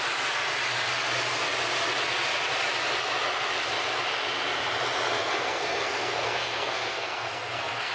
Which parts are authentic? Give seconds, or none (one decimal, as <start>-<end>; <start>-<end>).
0.0-5.2